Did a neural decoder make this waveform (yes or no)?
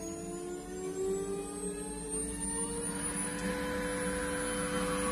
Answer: no